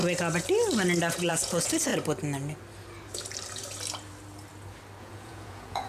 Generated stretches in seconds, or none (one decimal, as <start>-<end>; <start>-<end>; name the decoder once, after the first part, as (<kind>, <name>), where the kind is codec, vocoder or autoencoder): 1.3-1.9 (vocoder, Vocos); 5.0-5.9